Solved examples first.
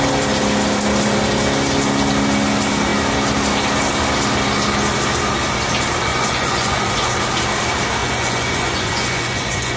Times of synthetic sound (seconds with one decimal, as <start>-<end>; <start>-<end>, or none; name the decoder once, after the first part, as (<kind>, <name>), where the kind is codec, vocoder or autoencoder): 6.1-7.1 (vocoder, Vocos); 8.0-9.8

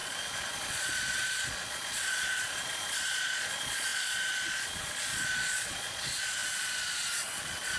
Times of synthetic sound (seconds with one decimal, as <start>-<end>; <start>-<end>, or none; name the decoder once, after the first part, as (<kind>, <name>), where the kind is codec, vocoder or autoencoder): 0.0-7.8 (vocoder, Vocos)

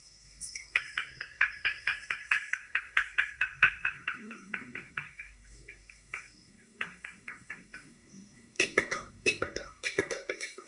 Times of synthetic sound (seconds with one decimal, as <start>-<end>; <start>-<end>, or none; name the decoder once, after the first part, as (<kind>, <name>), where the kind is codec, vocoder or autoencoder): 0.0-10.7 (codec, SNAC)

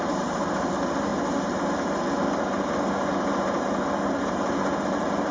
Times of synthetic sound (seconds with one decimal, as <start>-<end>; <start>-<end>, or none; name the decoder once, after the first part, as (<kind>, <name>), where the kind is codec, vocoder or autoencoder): 0.0-1.1 (vocoder, BigVGAN v2); 4.3-5.3

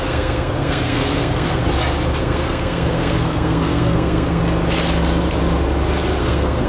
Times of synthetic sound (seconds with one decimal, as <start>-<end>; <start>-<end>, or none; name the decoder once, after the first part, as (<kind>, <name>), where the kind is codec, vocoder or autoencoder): 0.0-1.6 (codec, SNAC); 2.2-4.4; 6.2-6.7

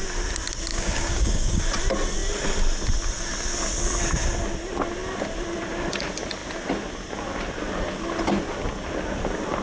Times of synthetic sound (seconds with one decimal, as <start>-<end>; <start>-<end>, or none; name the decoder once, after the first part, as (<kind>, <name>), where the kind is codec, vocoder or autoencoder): 0.7-1.6 (codec, DAC)